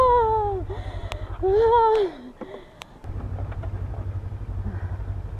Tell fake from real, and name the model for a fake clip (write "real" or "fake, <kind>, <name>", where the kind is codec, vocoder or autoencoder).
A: real